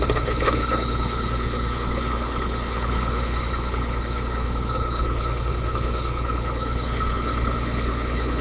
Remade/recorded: remade